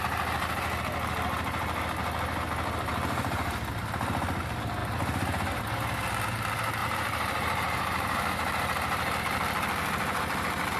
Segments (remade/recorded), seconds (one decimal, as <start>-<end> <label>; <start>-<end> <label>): 0.0-2.9 recorded; 2.9-3.9 remade; 3.9-4.8 recorded; 4.8-5.6 remade; 5.6-6.8 recorded; 6.8-9.2 remade; 9.2-10.8 recorded

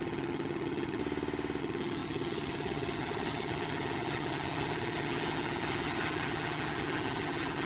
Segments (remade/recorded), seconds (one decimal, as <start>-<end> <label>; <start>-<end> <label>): 0.0-1.0 remade; 1.0-1.6 recorded; 1.6-7.7 remade